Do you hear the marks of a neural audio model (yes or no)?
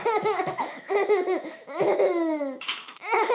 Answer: yes